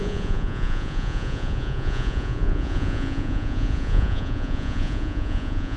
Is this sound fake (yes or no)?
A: yes